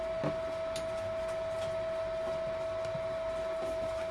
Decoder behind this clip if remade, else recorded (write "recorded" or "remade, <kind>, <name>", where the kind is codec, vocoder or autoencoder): recorded